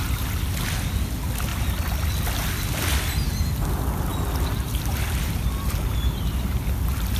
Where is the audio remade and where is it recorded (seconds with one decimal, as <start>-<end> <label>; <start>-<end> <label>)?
0.0-7.2 recorded